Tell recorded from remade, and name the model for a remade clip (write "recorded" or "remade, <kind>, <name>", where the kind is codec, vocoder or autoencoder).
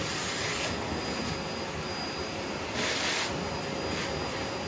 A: recorded